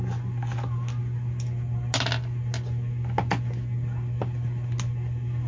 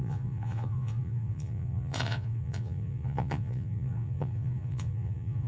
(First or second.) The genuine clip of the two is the first